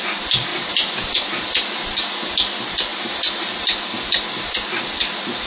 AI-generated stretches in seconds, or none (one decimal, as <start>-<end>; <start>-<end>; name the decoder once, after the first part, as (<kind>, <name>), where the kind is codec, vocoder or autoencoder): 0.5-2.3 (vocoder, BigVGAN v2); 2.9-3.6